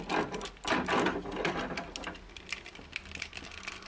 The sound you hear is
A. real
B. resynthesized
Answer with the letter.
A